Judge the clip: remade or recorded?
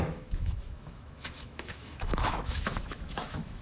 remade